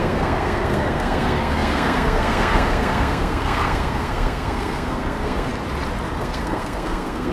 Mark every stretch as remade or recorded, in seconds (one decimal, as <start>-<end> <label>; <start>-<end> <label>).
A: 0.0-5.5 remade; 5.5-6.2 recorded; 6.2-7.3 remade